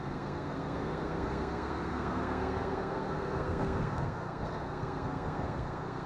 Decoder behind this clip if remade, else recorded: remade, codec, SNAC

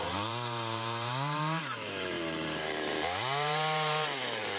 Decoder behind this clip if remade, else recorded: remade, vocoder, BigVGAN v2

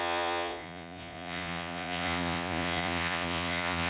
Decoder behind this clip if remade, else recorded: remade, vocoder, Vocos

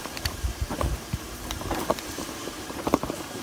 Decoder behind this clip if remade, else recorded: remade, vocoder, BigVGAN v2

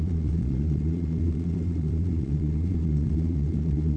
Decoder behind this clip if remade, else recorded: remade, vocoder, Vocos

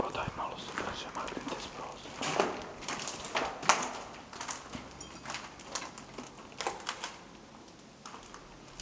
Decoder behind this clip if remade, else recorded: recorded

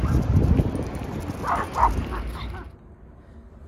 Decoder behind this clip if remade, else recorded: recorded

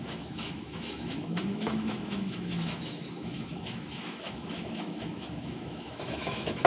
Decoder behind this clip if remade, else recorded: remade, autoencoder, DAC-VAE